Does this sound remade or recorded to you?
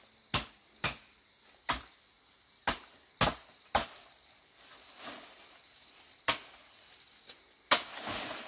recorded